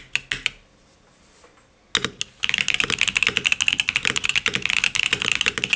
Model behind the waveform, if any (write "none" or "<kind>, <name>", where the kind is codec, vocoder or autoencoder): none